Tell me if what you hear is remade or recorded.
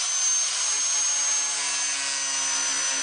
recorded